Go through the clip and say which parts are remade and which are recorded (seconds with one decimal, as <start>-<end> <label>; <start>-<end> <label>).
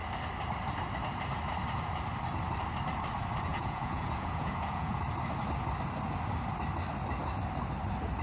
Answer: 0.0-3.5 recorded; 3.5-5.0 remade; 5.0-8.2 recorded